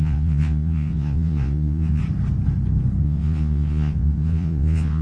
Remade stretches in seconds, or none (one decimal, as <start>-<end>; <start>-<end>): 0.0-2.0; 3.0-5.0

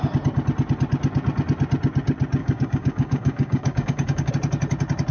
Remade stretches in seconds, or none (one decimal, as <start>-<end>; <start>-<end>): 2.4-4.3

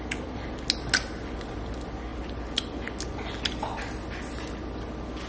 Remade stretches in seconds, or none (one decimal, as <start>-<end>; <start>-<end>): none

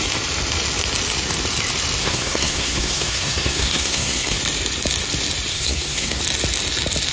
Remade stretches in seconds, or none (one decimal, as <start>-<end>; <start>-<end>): 2.0-4.4; 5.5-6.2

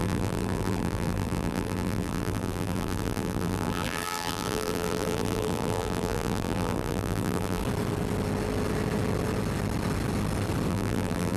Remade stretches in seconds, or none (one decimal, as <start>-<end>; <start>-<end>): 0.0-7.6; 10.7-11.4

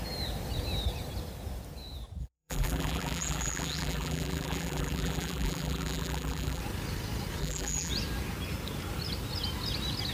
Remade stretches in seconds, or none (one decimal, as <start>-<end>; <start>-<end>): 2.2-6.6; 7.4-7.9

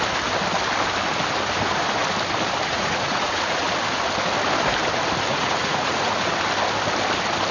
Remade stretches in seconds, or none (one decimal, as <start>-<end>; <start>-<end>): 2.7-3.7; 5.3-6.4

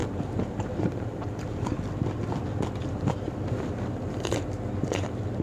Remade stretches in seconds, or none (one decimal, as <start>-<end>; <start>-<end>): 0.0-1.8; 2.8-4.3